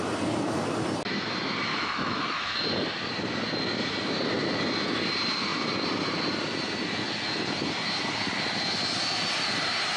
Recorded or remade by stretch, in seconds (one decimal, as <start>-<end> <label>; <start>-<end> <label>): 0.0-1.7 recorded; 1.7-2.6 remade; 2.6-10.0 recorded